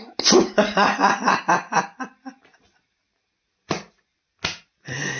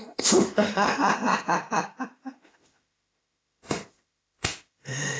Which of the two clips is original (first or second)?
first